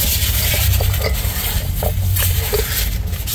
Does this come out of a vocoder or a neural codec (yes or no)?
yes